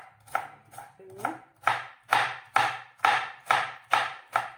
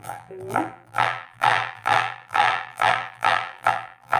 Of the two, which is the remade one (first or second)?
second